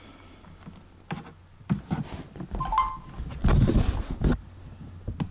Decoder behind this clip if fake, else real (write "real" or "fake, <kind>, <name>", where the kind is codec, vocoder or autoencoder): real